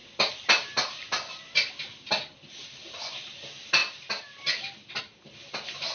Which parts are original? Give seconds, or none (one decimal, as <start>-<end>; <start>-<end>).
0.0-5.9